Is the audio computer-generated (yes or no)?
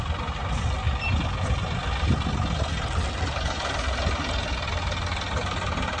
no